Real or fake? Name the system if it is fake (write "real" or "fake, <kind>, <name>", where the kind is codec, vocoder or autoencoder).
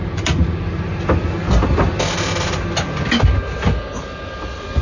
real